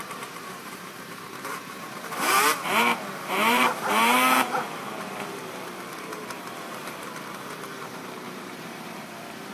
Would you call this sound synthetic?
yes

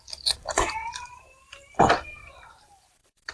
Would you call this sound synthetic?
yes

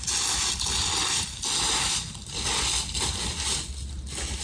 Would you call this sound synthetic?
no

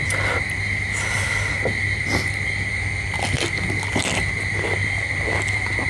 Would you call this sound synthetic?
no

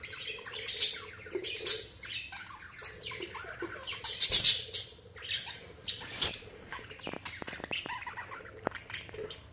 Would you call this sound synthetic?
yes